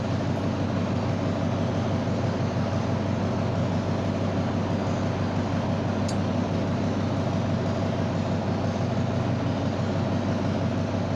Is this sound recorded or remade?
recorded